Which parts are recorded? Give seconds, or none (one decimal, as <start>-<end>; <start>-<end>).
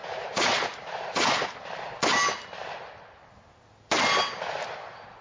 1.5-5.2